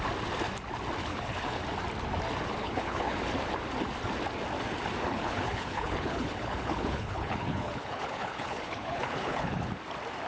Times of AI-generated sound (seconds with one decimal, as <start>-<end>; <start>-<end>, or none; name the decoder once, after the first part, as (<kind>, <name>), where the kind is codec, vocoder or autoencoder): 1.1-1.6 (codec, HILCodec); 2.6-3.2; 5.1-9.6